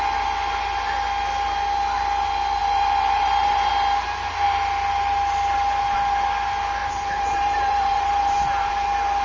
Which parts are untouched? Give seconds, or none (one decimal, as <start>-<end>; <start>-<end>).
0.0-2.6; 3.7-6.8; 8.7-9.2